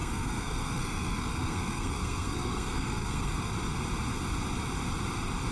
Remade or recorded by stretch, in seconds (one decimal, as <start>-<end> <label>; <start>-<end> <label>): 0.0-3.3 remade; 3.3-5.5 recorded